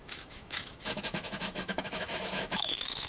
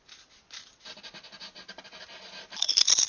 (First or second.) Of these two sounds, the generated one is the first